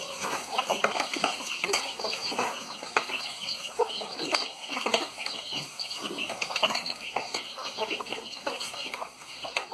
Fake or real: fake